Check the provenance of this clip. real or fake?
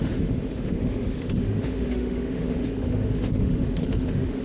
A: fake